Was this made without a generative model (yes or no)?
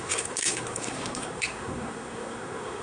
no